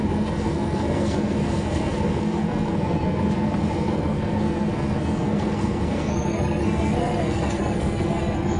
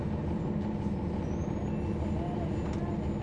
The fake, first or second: first